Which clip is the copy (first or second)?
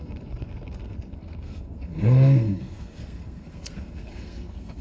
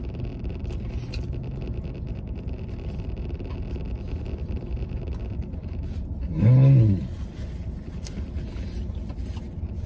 first